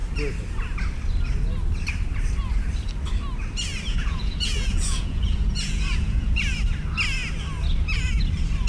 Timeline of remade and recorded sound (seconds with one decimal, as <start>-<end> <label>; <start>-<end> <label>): 0.0-3.9 recorded; 3.9-6.4 remade; 6.4-8.7 recorded